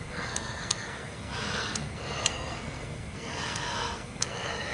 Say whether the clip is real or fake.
fake